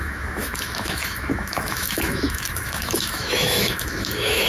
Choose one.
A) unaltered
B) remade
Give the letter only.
B